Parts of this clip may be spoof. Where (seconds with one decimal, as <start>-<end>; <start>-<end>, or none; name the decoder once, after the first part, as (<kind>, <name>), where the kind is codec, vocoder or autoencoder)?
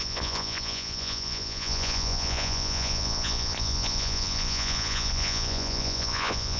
0.0-6.6 (vocoder, Vocos)